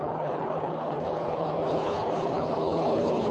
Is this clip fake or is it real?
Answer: fake